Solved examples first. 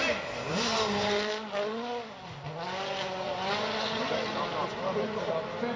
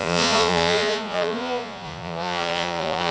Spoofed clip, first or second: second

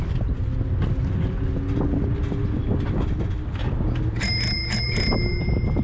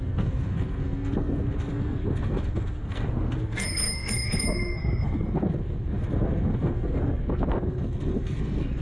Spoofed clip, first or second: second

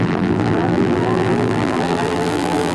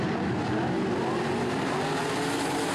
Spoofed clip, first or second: first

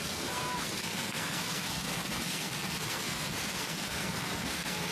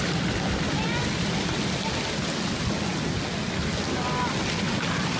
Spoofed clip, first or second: first